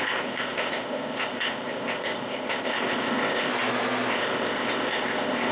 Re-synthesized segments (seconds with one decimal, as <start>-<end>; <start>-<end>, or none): 0.0-3.5; 4.1-5.5